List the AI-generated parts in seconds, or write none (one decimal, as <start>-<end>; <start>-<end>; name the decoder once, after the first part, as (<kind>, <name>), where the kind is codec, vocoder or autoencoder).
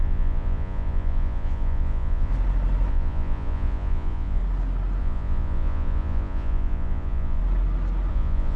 0.0-2.3 (vocoder, Vocos); 2.9-4.4; 5.0-7.4; 8.1-8.6